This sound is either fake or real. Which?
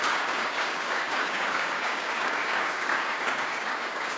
fake